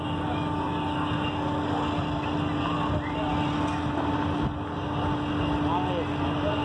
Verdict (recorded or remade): recorded